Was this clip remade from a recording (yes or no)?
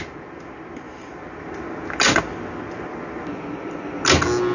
no